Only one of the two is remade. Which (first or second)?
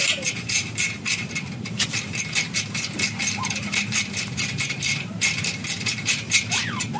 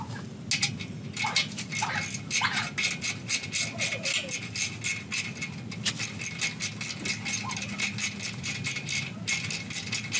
first